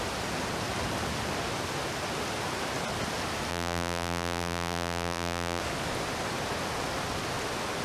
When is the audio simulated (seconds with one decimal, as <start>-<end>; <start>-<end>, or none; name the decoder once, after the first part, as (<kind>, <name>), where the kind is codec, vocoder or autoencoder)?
3.5-5.6 (vocoder, BigVGAN v2)